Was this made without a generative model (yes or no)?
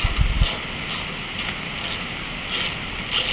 yes